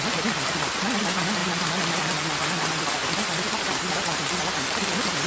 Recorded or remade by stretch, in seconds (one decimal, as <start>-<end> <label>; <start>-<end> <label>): 0.0-5.3 recorded